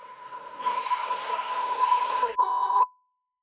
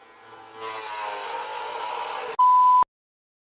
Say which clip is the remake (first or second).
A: first